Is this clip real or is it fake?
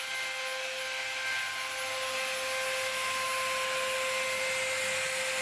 real